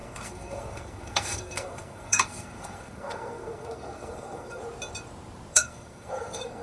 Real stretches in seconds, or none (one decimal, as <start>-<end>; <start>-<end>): 4.6-5.5